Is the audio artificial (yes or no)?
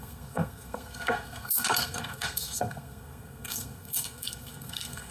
yes